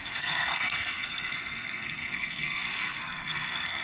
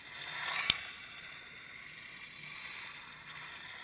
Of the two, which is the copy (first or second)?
first